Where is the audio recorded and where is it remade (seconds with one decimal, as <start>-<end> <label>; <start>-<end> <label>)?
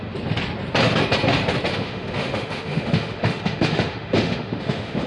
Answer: 0.0-1.7 recorded; 1.7-5.1 remade